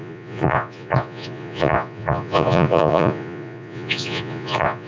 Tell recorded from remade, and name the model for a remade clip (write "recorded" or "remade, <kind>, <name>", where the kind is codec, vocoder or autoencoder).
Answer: remade, vocoder, Vocos